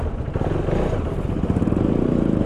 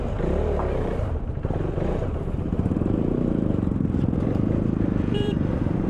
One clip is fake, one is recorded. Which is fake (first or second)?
second